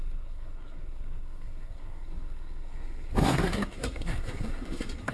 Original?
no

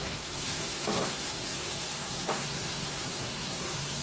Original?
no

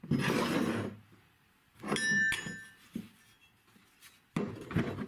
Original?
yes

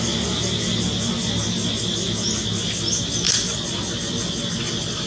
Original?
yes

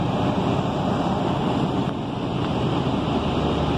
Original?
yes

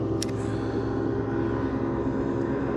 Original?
yes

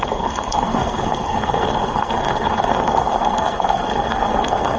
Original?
no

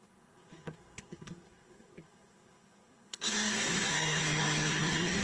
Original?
no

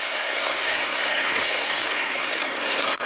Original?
no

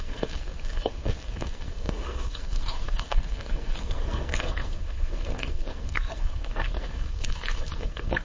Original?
no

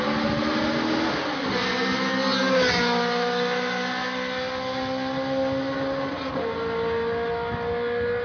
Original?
yes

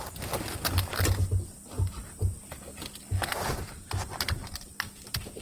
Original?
yes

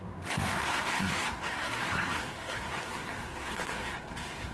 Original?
no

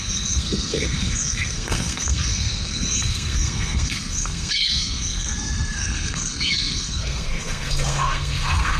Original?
no